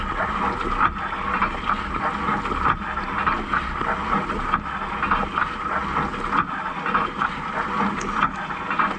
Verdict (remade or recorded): recorded